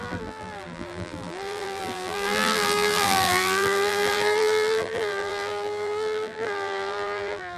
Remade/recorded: remade